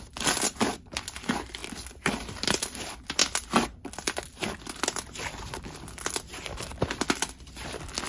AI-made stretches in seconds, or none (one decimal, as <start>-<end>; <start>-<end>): none